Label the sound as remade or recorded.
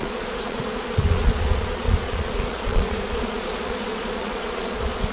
remade